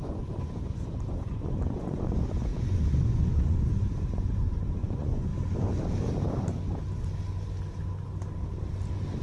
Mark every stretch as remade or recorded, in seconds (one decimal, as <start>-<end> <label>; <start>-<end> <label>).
0.0-5.3 remade; 5.3-9.2 recorded